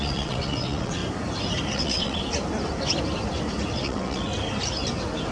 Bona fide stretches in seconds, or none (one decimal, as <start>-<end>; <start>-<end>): 1.0-1.7; 2.2-3.7; 4.3-5.3